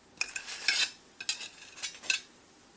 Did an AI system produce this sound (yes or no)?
no